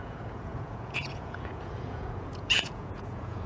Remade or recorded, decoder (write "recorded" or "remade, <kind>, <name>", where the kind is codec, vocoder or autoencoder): remade, vocoder, Vocos